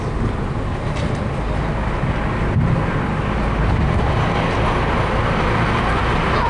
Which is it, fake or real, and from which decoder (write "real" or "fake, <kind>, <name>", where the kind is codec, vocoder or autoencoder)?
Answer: real